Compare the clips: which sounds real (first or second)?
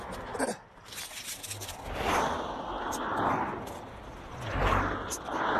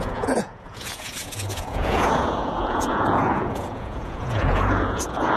first